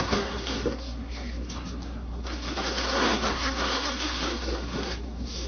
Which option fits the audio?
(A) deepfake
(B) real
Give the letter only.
A